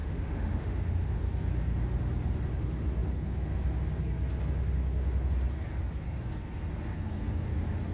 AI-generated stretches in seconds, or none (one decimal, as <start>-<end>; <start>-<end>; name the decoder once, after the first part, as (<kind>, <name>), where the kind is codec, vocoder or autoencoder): 0.0-1.2 (autoencoder, DAC-VAE)